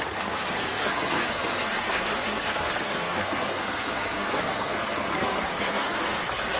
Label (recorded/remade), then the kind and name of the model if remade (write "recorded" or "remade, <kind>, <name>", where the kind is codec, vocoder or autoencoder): remade, codec, SNAC